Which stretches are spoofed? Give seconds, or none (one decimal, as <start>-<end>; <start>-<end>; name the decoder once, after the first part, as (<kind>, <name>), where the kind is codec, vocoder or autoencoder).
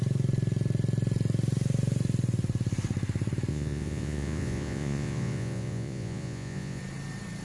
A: 3.5-6.8 (vocoder, Vocos)